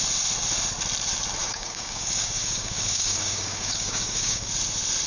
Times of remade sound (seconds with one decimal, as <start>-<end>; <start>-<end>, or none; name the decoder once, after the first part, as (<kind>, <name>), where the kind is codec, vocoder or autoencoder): 1.4-4.5 (codec, DAC)